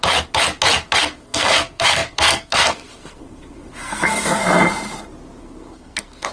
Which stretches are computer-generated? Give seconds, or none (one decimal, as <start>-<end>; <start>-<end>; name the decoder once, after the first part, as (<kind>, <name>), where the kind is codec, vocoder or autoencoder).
1.0-4.4 (codec, SNAC); 5.4-6.3